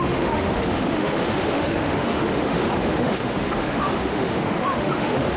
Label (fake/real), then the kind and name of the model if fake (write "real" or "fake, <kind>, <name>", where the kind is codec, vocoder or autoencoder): fake, autoencoder, DAC-VAE